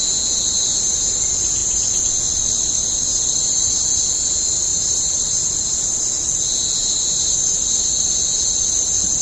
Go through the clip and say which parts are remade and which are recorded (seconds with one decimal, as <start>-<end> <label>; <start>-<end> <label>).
0.0-4.7 recorded; 4.7-6.0 remade; 6.0-6.8 recorded; 6.8-7.3 remade; 7.3-9.2 recorded